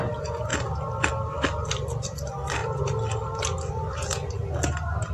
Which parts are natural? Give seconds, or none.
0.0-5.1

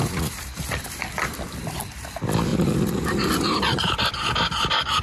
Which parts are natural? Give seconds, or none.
none

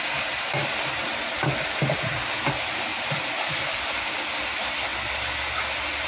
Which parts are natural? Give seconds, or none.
0.0-2.9; 4.1-6.1

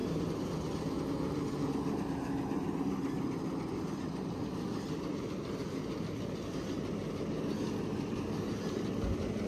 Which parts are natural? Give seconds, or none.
0.0-9.5

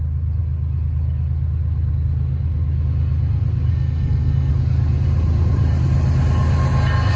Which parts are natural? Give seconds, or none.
0.0-3.7; 4.5-7.2

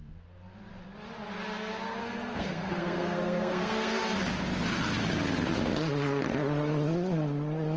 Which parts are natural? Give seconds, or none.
0.0-2.0; 4.0-7.8